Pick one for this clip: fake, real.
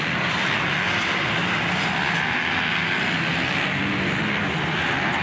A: real